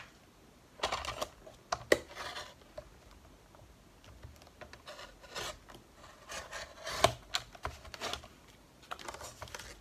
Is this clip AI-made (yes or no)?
no